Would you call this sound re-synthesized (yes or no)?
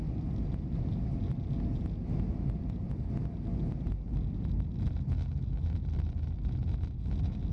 no